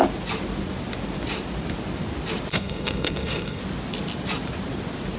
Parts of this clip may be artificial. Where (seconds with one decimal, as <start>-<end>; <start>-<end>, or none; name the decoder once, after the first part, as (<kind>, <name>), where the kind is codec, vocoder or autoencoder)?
2.5-3.6 (codec, SNAC)